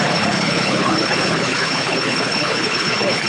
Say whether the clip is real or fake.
fake